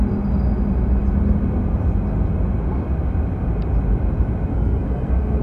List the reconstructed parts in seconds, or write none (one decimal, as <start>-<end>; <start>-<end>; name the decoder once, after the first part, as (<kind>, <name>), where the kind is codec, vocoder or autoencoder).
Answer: 4.5-5.4 (codec, SNAC)